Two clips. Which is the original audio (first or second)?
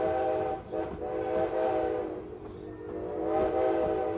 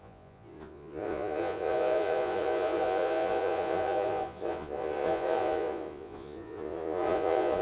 first